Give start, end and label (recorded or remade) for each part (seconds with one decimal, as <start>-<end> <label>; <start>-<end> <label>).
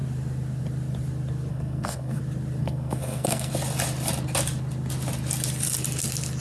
0.0-1.5 recorded; 1.5-2.2 remade; 2.2-2.6 recorded; 2.6-3.5 remade; 3.5-6.4 recorded